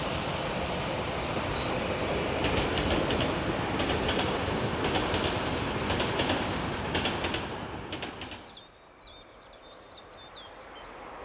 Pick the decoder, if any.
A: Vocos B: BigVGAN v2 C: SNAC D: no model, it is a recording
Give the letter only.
D